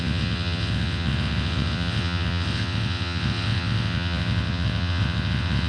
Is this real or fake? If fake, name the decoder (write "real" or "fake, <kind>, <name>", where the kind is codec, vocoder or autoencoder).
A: fake, vocoder, WaveNeXt